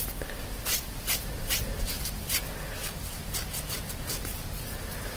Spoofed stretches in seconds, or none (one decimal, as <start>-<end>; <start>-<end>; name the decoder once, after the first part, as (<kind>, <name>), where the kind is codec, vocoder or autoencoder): none